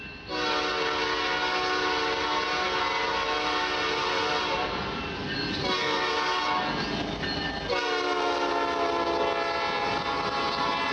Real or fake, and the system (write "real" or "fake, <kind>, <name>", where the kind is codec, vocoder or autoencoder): real